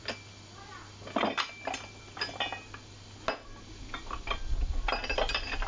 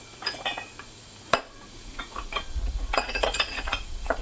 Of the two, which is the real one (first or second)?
first